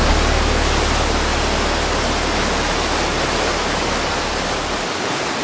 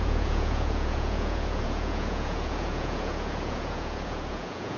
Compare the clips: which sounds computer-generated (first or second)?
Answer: second